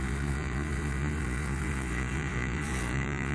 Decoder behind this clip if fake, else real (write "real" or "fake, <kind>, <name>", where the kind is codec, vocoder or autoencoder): fake, vocoder, Vocos